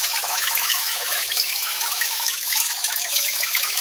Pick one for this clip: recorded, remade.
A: remade